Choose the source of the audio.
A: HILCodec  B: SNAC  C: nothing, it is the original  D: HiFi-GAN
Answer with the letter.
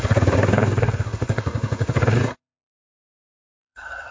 B